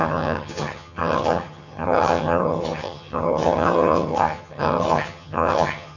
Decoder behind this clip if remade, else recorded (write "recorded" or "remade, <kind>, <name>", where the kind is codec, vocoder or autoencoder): remade, vocoder, HiFi-GAN